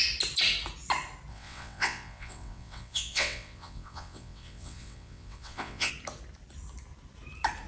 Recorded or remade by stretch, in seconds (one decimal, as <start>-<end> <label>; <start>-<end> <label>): 0.0-1.3 recorded; 1.3-5.9 remade; 5.9-7.7 recorded